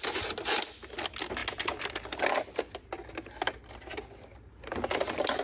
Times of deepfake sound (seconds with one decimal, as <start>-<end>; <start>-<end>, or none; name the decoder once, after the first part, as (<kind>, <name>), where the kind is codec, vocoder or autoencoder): none